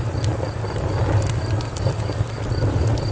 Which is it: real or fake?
real